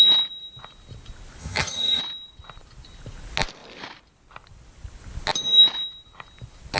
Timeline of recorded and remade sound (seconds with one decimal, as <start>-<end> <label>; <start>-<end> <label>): 0.0-1.4 recorded; 1.4-2.0 remade; 2.0-6.8 recorded